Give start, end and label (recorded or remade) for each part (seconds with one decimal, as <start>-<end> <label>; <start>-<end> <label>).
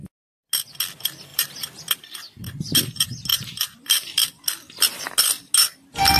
0.0-1.3 recorded; 1.3-1.8 remade; 1.8-3.3 recorded; 3.3-4.3 remade; 4.3-6.2 recorded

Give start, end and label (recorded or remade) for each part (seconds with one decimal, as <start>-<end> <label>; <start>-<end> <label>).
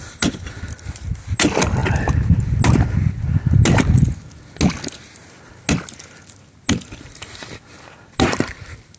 0.0-9.0 recorded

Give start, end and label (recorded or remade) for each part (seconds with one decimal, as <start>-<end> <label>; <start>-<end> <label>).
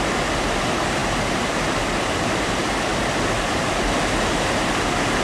0.0-5.2 recorded